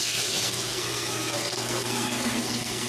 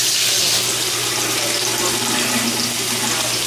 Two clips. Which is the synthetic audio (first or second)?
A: first